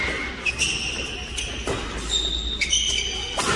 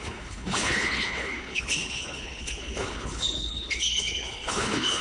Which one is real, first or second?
first